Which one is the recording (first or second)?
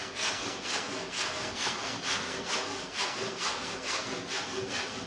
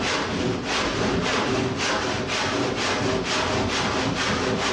second